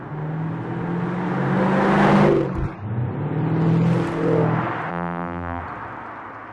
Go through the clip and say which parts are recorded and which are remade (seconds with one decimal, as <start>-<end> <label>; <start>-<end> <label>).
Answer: 0.0-4.9 recorded; 4.9-5.6 remade; 5.6-6.5 recorded